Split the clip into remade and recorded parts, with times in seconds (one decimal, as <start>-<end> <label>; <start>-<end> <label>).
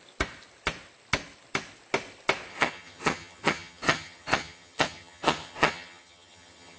0.0-2.5 recorded; 2.5-6.8 remade